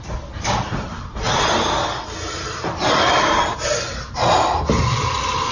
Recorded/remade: recorded